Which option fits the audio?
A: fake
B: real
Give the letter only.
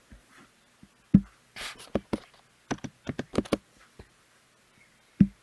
B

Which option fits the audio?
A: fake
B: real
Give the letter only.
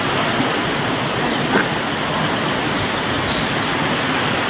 B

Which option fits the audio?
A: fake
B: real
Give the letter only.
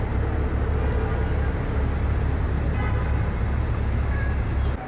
B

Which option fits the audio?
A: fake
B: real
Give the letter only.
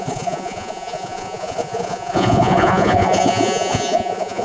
A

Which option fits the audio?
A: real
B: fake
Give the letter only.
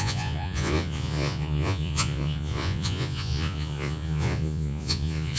B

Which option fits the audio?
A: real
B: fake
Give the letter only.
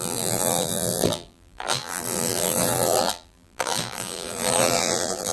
B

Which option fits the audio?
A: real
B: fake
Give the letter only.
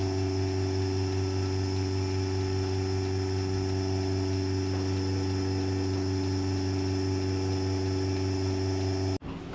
A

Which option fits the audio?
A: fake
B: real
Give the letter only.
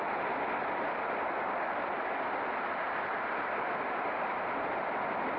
A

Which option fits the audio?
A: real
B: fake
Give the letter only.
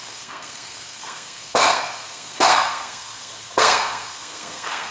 B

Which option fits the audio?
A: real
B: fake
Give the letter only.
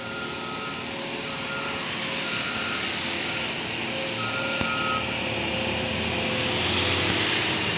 A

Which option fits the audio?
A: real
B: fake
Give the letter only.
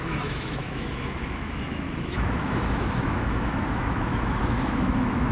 B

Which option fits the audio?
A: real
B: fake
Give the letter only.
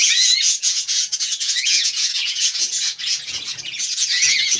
B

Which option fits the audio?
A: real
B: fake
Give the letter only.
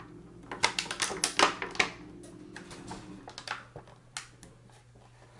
A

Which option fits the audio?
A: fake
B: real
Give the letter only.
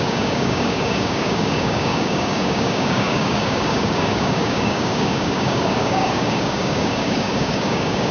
A